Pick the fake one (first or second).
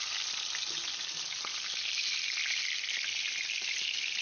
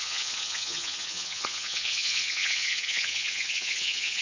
second